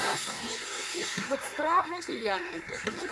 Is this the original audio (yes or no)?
no